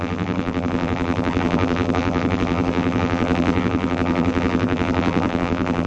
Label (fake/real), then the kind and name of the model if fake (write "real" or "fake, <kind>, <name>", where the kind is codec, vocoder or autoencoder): fake, vocoder, BigVGAN v2